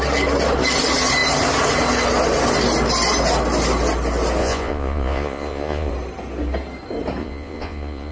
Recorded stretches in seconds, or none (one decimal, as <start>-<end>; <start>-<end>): 0.0-4.4; 5.9-7.2